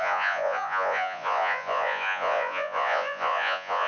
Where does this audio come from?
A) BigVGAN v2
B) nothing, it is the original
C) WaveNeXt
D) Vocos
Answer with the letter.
D